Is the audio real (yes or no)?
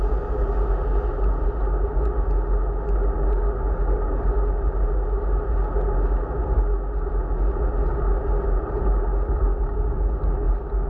yes